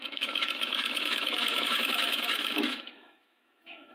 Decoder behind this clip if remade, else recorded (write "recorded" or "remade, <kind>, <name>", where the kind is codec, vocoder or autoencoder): remade, autoencoder, DAC-VAE